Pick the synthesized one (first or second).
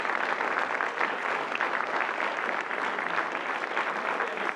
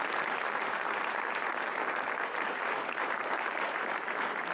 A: second